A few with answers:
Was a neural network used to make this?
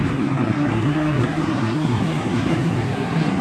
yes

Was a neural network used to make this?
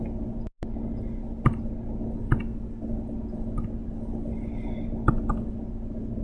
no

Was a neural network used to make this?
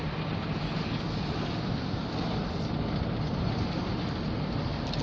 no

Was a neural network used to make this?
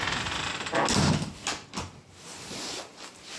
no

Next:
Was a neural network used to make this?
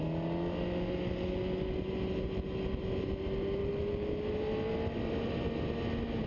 no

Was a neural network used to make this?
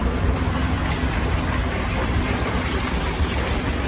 no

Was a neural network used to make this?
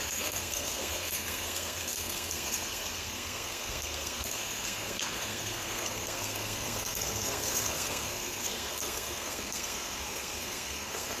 yes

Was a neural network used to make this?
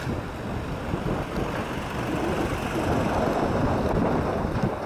no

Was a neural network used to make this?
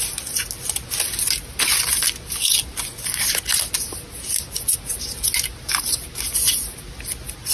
no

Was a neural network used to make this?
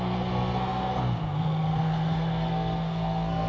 yes